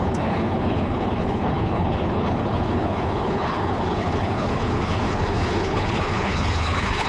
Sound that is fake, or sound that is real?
fake